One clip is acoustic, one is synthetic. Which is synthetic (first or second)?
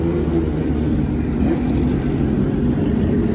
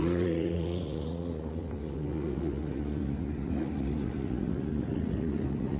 second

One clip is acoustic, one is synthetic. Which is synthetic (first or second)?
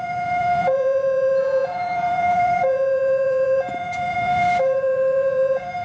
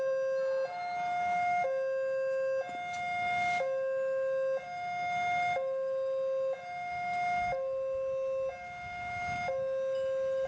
first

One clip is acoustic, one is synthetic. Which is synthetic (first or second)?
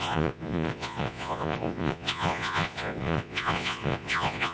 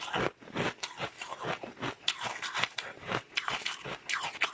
first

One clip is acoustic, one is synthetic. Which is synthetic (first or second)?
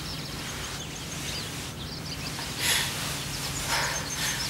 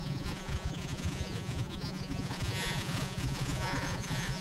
second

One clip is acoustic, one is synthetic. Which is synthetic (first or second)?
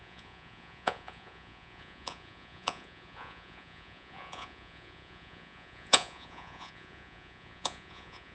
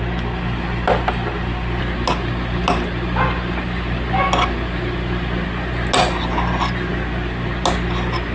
first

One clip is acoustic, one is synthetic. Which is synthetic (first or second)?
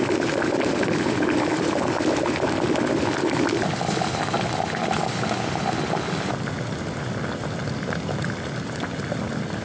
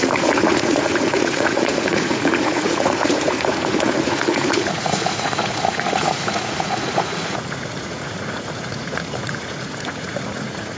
second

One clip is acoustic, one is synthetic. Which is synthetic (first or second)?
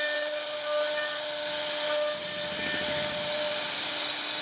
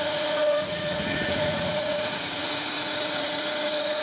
second